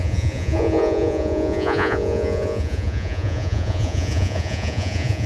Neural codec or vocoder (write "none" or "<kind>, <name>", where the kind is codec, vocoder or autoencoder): vocoder, Vocos